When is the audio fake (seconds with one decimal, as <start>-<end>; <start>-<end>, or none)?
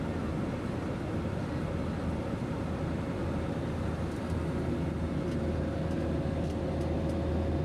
none